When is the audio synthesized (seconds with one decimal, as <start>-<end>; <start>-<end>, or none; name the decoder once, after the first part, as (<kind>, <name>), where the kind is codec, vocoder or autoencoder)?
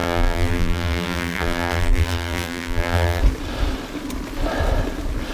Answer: 0.0-3.2 (vocoder, BigVGAN v2)